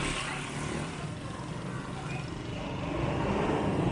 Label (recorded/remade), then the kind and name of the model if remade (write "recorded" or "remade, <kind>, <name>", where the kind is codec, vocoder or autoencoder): recorded